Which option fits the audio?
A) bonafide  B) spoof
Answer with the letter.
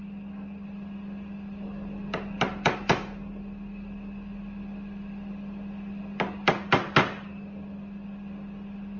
A